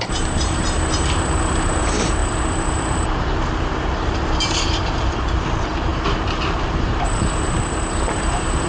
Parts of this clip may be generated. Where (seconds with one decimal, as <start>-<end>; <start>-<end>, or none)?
0.0-5.9; 6.6-8.7